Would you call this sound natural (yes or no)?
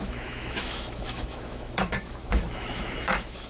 no